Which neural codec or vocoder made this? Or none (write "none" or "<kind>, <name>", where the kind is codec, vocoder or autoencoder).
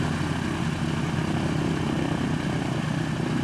none